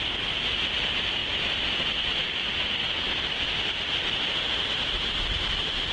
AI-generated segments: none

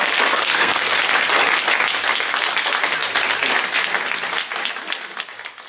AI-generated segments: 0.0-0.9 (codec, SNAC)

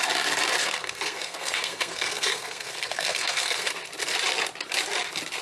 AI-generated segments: 0.6-3.7 (codec, SNAC)

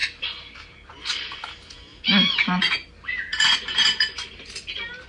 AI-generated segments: none

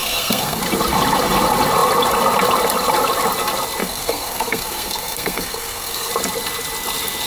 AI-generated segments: 0.0-0.6 (codec, SNAC); 3.8-6.1

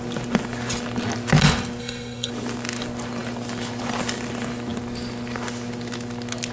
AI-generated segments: 1.8-2.3 (codec, SNAC)

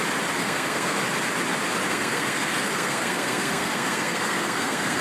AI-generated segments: 0.4-1.0 (codec, SNAC); 1.9-5.0

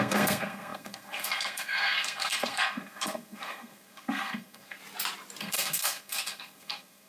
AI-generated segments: 0.0-4.8 (codec, SNAC); 5.4-7.1